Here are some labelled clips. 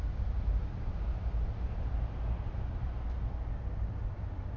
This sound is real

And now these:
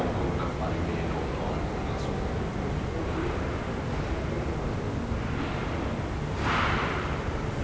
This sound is real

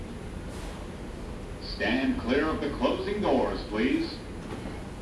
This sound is real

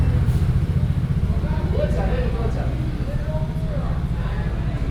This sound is real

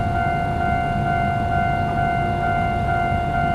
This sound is real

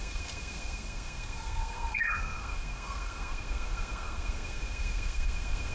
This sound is fake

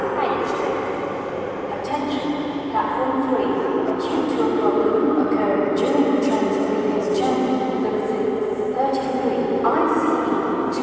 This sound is real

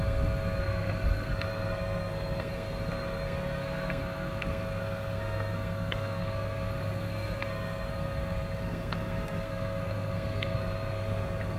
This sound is fake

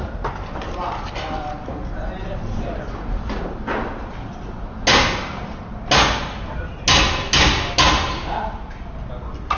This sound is real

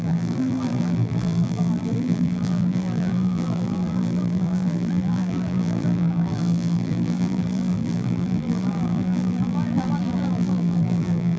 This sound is fake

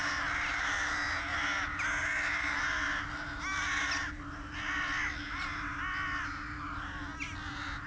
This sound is real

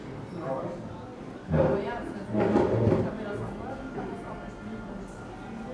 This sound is real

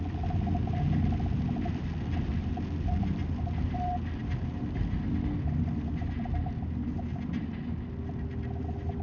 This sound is real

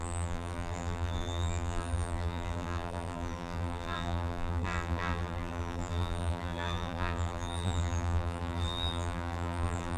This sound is fake